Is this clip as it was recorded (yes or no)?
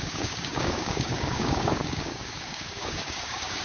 no